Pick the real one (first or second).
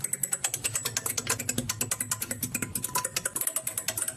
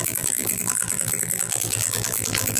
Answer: first